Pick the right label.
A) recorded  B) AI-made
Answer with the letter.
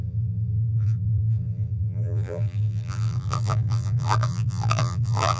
B